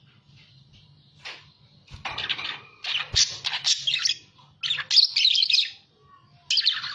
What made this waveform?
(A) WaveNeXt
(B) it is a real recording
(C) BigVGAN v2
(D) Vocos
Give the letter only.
B